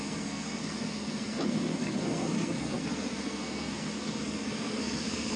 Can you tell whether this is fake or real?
fake